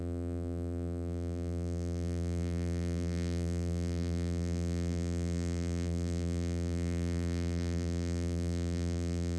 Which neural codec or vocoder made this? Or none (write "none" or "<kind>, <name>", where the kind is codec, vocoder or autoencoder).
vocoder, BigVGAN v2